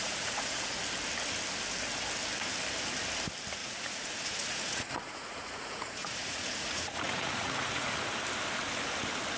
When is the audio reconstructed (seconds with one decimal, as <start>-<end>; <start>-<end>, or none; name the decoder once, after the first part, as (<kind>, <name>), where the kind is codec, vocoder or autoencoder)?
0.0-0.8 (vocoder, Vocos); 3.6-8.0